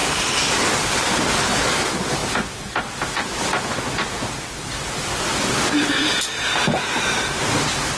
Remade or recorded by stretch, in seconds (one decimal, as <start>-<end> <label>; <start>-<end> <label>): 0.0-8.0 recorded